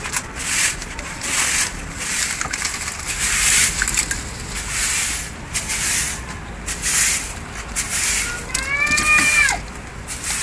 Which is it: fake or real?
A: real